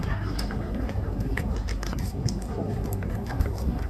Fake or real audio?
fake